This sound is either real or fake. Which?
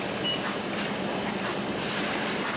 real